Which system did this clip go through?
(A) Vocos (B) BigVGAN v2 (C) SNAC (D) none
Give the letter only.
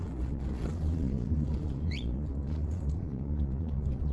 A